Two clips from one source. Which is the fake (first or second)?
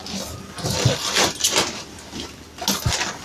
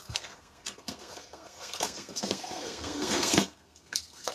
second